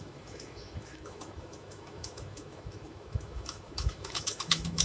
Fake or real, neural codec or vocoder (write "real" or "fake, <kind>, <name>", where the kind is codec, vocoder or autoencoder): fake, autoencoder, DAC-VAE